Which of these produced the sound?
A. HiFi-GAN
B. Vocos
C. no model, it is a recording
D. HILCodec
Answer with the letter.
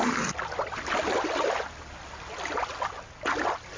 C